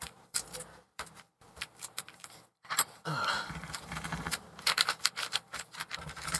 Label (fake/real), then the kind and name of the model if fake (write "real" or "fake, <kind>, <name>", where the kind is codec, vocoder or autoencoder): fake, vocoder, BigVGAN v2